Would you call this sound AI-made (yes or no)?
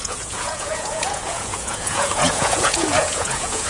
yes